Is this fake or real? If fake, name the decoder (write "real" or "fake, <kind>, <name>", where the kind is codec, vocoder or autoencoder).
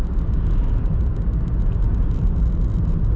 real